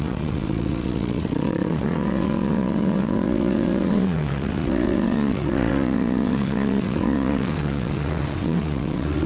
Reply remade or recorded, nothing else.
remade